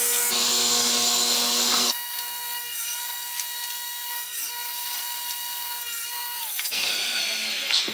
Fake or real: fake